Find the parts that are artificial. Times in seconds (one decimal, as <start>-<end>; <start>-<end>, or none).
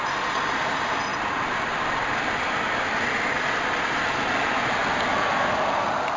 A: none